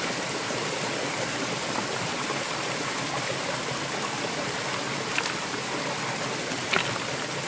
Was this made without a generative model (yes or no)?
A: yes